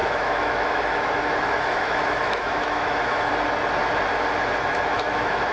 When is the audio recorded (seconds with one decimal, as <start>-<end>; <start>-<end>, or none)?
3.3-4.7